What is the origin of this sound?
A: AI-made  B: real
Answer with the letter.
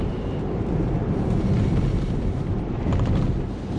B